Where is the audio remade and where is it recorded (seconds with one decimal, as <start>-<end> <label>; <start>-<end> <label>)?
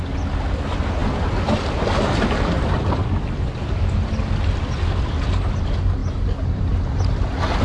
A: 0.0-1.0 recorded; 1.0-5.2 remade; 5.2-6.0 recorded; 6.0-6.7 remade; 6.7-7.6 recorded